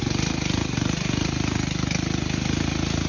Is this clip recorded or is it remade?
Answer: recorded